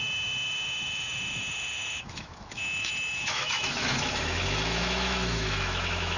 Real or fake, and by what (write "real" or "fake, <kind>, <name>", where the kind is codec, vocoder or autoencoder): fake, autoencoder, DAC-VAE